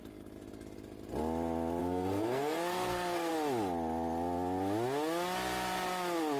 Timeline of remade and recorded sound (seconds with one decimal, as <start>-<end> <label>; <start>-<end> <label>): 0.0-1.8 recorded; 1.8-3.3 remade; 3.3-6.4 recorded